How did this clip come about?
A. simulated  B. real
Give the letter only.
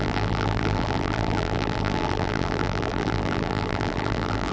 A